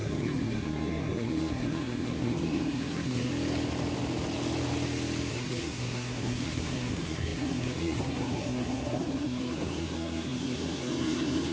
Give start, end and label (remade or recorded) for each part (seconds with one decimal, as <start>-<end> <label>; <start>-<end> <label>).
0.0-3.3 remade; 3.3-5.3 recorded; 5.3-11.5 remade